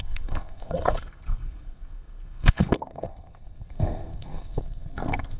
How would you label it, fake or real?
fake